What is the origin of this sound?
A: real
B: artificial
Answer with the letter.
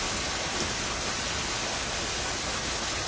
A